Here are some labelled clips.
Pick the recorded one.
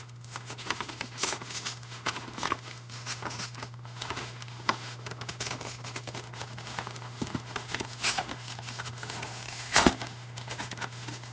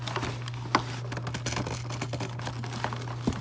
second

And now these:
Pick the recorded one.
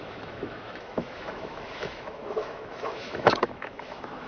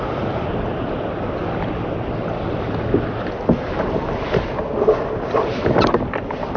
second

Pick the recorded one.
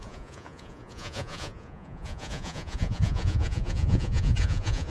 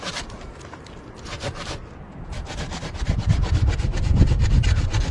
second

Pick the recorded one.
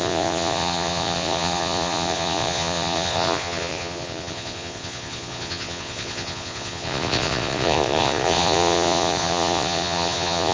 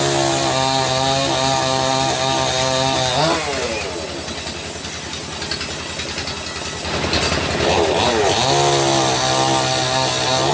second